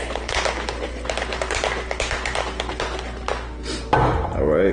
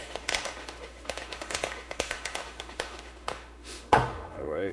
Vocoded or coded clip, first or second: second